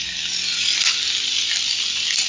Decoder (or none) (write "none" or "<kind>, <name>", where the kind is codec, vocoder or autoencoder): none